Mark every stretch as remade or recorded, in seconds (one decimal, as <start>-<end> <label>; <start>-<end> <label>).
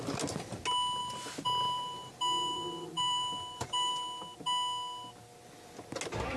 0.0-1.0 recorded; 1.0-3.9 remade; 3.9-6.4 recorded